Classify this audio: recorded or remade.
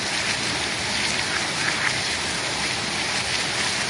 recorded